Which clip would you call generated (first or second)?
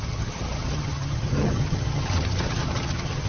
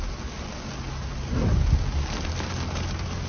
first